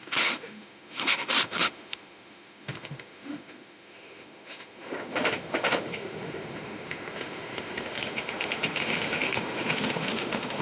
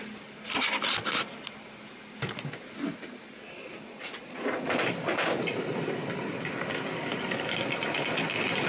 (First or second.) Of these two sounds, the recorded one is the second